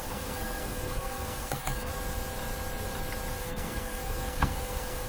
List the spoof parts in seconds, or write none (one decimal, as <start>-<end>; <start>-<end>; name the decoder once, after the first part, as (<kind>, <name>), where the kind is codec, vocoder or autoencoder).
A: 0.0-1.9 (codec, SNAC); 3.4-5.1